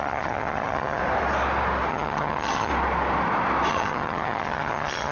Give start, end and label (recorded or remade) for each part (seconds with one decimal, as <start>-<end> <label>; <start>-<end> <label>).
0.0-1.0 remade; 1.0-1.9 recorded; 1.9-2.7 remade; 2.7-3.7 recorded; 3.7-5.1 remade